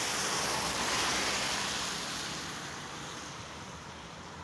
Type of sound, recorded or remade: remade